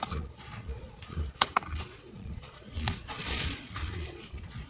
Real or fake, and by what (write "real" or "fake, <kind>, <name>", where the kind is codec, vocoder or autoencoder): fake, vocoder, Vocos